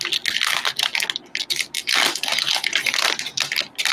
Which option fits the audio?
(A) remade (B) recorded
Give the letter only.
B